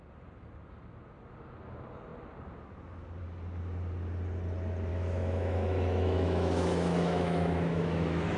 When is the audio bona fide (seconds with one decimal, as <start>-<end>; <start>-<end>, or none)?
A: 0.0-4.9